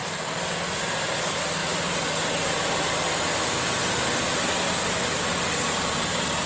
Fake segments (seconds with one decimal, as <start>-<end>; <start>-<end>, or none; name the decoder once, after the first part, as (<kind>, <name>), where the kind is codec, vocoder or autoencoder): none